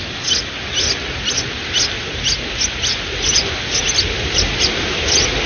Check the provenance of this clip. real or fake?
real